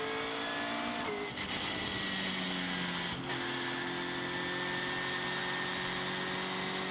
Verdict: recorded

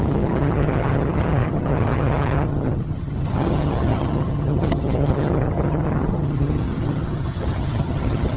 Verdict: remade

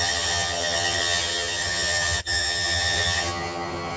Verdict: remade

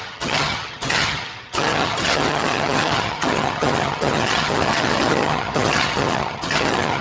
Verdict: remade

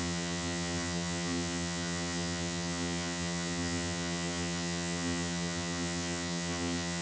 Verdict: remade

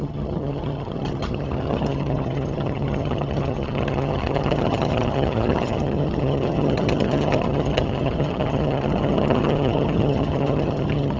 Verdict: remade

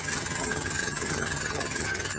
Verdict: remade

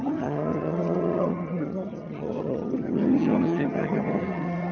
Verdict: remade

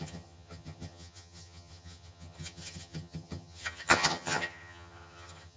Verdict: remade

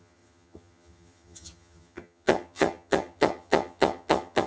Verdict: remade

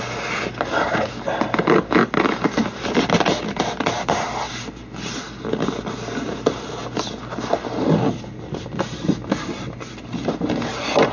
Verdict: recorded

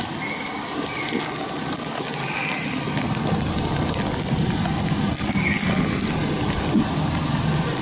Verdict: recorded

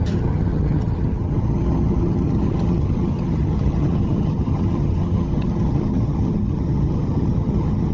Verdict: remade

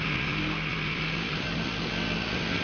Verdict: recorded